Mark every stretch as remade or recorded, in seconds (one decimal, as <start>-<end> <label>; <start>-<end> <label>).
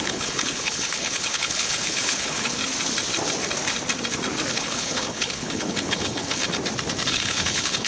0.0-2.6 remade; 2.6-4.5 recorded; 4.5-6.4 remade; 6.4-7.1 recorded; 7.1-7.9 remade